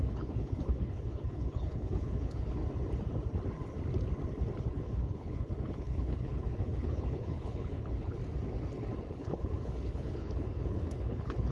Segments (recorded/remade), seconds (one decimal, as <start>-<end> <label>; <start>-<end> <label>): 0.0-2.6 remade; 2.6-4.7 recorded; 4.7-8.2 remade; 8.2-9.1 recorded; 9.1-11.5 remade

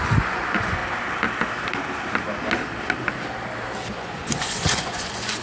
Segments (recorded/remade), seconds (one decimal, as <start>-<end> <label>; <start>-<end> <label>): 0.0-0.8 remade; 0.8-4.0 recorded; 4.0-5.4 remade

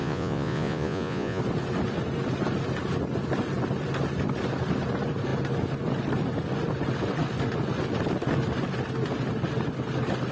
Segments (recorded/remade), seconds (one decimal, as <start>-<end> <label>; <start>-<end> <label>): 0.0-1.4 remade; 1.4-10.3 recorded